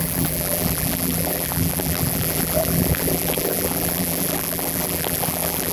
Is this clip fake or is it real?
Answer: fake